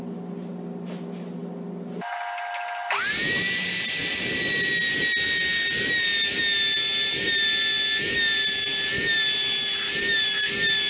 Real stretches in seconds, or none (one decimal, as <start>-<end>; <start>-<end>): 0.0-10.9